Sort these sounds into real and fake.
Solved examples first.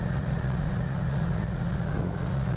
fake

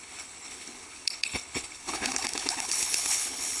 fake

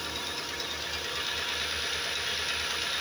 real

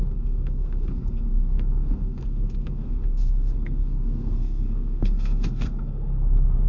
fake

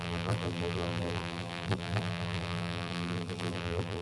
fake